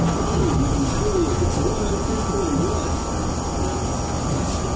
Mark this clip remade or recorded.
recorded